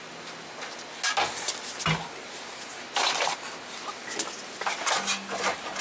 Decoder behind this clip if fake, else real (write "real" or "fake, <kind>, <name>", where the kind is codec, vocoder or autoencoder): real